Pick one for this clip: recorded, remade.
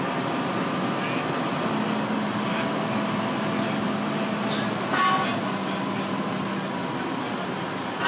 recorded